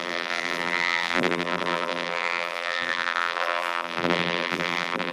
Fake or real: fake